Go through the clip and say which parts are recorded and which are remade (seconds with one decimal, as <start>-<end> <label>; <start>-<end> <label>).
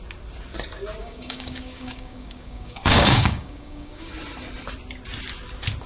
0.0-1.0 recorded; 1.0-4.1 remade; 4.1-5.9 recorded